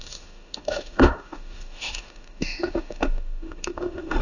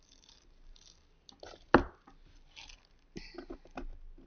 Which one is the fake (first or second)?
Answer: first